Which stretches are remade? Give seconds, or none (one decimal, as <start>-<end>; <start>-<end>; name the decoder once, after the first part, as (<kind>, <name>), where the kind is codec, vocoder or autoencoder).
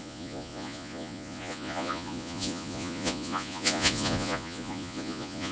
0.0-5.5 (vocoder, Vocos)